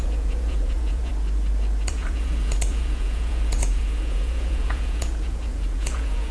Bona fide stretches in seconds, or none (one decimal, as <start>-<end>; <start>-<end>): 1.1-1.9